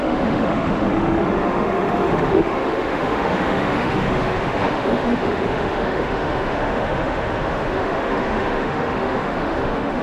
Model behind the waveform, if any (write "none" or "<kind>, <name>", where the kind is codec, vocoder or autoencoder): autoencoder, DAC-VAE